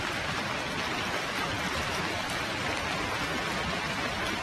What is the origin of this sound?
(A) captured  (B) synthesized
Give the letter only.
A